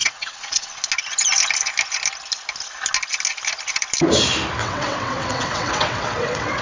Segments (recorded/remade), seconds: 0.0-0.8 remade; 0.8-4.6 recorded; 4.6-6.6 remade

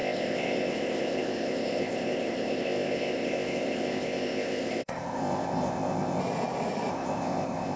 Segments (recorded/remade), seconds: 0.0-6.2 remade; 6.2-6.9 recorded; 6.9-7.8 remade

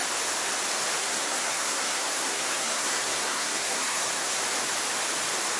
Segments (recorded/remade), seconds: 0.0-1.0 recorded; 1.0-4.4 remade; 4.4-5.6 recorded

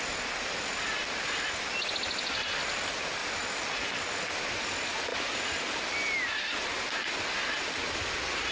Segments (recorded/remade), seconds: 0.0-8.5 recorded

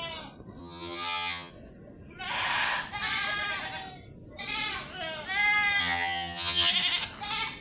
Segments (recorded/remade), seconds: 0.0-0.6 recorded; 0.6-1.5 remade; 1.5-5.8 recorded; 5.8-6.7 remade; 6.7-7.6 recorded

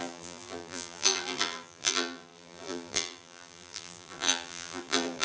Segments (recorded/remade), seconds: 0.0-5.2 remade